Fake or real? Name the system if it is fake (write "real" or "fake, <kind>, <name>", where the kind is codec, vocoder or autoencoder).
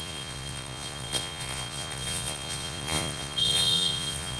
fake, vocoder, Vocos